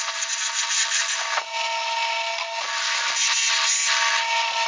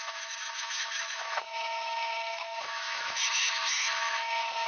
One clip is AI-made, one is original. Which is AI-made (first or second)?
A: second